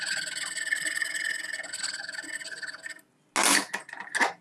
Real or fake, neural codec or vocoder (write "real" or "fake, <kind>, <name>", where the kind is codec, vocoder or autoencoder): real